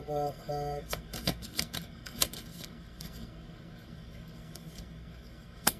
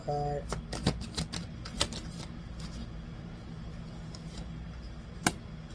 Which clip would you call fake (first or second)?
first